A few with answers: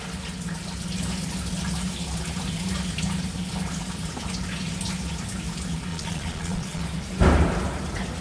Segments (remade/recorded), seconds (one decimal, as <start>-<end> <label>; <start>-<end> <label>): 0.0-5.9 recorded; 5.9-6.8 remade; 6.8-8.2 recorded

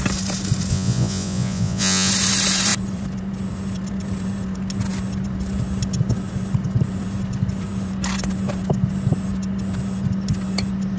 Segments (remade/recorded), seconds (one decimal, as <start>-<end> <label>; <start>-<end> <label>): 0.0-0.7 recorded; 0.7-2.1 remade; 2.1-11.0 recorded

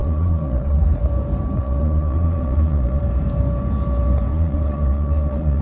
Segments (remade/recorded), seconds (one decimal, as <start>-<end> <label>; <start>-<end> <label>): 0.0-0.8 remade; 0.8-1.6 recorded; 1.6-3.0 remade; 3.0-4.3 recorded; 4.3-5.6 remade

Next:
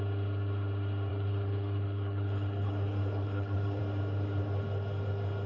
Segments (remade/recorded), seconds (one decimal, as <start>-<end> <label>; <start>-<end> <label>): 0.0-1.1 recorded; 1.1-3.8 remade; 3.8-5.5 recorded

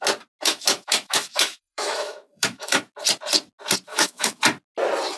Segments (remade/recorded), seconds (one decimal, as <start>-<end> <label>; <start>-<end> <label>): 0.0-0.5 recorded; 0.5-2.8 remade; 2.8-3.9 recorded; 3.9-4.4 remade; 4.4-5.2 recorded